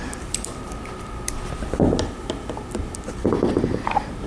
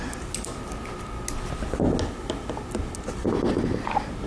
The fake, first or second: first